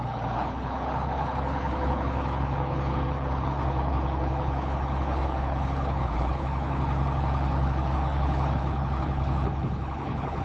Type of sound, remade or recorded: remade